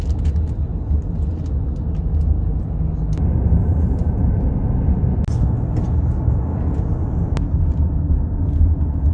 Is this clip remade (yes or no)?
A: no